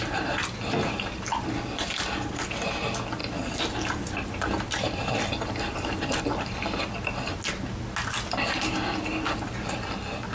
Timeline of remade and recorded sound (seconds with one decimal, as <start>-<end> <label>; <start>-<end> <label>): 0.0-3.2 recorded; 3.2-6.2 remade; 6.2-10.3 recorded